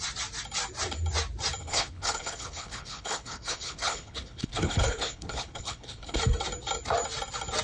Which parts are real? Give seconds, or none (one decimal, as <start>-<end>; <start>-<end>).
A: 0.0-1.6; 6.2-7.6